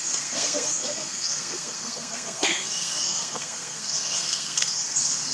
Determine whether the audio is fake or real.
fake